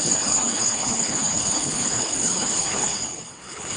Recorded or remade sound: remade